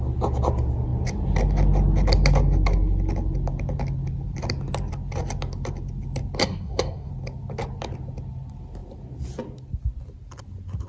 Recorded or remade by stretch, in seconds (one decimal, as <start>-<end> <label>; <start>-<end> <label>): 0.0-6.4 recorded; 6.4-7.1 remade; 7.1-10.9 recorded